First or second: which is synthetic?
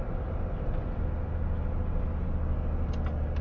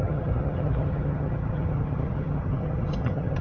second